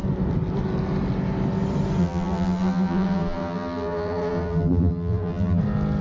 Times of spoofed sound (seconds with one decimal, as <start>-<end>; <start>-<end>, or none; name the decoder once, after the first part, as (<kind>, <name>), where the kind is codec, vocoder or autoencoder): 2.0-5.6 (vocoder, BigVGAN v2)